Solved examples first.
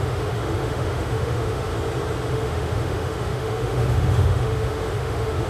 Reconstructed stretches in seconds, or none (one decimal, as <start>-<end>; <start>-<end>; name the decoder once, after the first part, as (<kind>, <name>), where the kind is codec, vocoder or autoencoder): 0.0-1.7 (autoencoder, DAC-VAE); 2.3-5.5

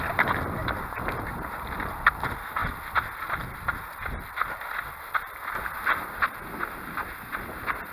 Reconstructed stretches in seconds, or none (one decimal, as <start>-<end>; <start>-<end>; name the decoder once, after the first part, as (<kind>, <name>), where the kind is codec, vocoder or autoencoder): none

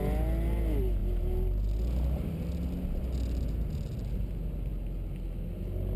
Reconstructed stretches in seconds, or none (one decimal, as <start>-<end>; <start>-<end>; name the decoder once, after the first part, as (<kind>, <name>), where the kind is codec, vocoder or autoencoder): none

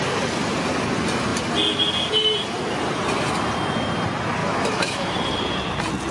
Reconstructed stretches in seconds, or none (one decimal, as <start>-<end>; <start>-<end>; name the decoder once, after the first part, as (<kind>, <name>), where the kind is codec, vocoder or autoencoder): 4.4-5.2 (autoencoder, DAC-VAE)

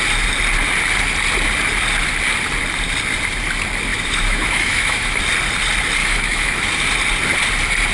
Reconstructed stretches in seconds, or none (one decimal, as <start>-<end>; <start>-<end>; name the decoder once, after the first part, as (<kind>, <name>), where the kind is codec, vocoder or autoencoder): 3.9-5.2 (autoencoder, DAC-VAE); 6.0-6.7